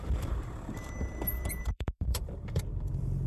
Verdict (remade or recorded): remade